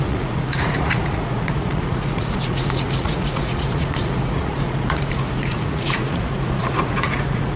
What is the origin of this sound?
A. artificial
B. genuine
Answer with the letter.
A